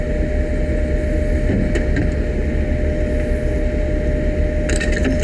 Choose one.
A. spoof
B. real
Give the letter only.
B